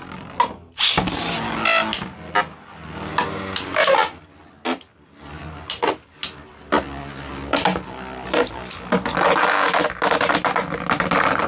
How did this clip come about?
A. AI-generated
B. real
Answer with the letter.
B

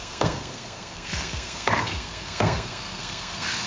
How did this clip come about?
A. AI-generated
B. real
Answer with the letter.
A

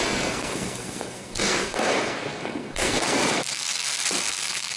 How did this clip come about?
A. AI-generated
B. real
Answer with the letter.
A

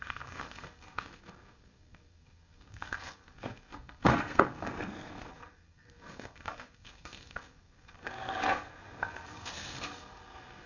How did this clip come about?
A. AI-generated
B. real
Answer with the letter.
A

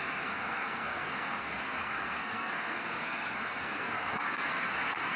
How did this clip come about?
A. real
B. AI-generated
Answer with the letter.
B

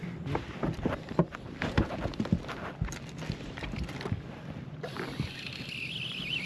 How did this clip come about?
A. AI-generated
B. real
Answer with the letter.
B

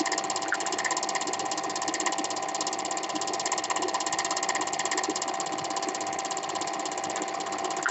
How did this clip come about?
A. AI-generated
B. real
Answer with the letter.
B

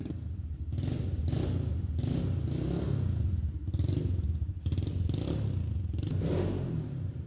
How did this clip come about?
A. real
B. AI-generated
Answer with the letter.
A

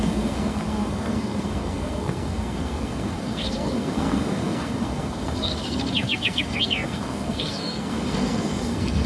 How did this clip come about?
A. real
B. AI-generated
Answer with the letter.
B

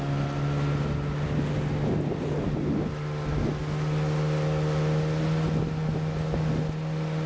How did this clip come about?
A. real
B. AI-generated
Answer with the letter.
A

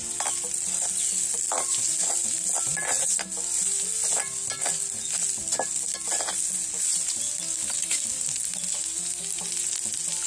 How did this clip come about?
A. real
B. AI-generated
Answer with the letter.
A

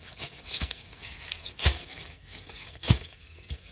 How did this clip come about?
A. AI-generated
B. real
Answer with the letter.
A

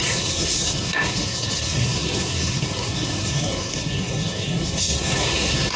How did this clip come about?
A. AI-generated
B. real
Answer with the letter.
A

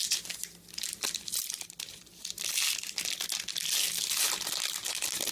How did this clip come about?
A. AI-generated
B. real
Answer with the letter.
B